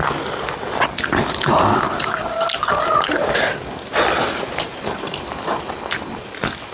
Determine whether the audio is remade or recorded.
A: recorded